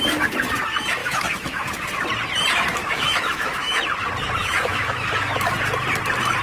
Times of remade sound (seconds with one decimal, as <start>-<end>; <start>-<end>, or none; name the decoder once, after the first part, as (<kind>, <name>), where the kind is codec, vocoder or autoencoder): 1.0-1.7 (autoencoder, DAC-VAE); 2.8-3.8; 4.4-5.1